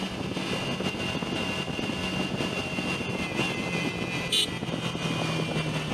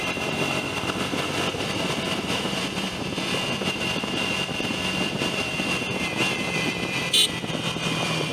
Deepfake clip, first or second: second